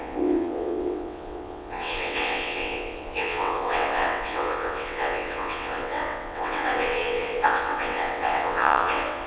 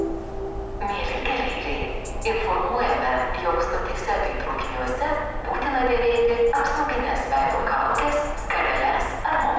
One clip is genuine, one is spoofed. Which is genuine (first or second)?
second